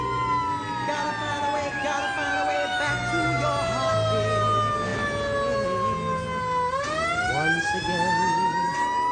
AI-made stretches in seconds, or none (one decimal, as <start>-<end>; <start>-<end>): none